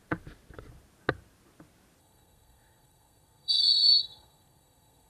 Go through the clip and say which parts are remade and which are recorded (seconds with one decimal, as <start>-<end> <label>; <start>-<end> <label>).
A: 0.0-2.0 recorded; 2.0-5.1 remade